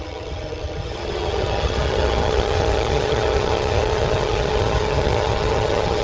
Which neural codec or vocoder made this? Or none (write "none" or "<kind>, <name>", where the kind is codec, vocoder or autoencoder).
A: vocoder, HiFi-GAN